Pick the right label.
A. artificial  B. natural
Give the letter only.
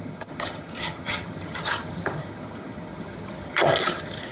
A